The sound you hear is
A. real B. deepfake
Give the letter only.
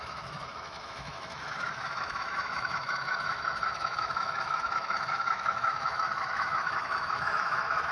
B